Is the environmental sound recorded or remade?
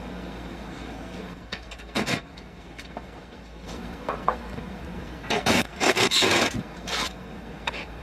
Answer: remade